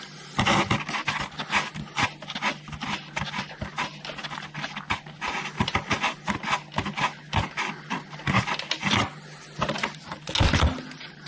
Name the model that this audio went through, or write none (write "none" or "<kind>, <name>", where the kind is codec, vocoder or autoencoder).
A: none